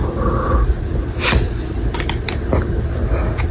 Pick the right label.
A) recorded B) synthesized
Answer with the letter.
A